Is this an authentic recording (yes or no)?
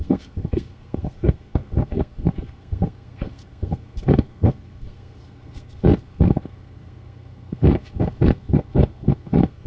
no